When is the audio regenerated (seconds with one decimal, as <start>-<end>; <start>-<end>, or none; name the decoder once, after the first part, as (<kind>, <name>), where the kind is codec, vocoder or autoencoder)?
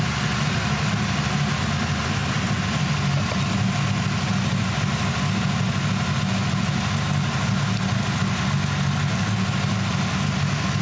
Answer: none